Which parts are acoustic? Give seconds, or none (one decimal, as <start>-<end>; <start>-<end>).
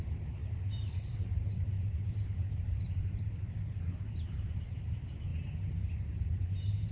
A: 0.0-0.4; 4.5-6.9